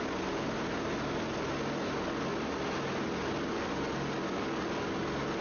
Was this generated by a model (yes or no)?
no